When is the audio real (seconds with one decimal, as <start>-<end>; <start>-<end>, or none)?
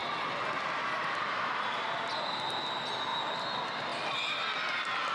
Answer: 0.0-5.1